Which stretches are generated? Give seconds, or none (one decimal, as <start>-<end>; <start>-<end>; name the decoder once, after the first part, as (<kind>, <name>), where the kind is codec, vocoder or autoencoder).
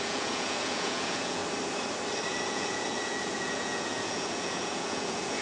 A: 0.0-1.4 (vocoder, Vocos); 2.3-5.4